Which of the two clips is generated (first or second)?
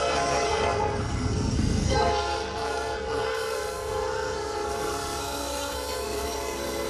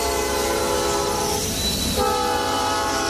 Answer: first